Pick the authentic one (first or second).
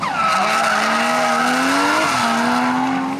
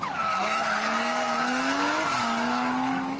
first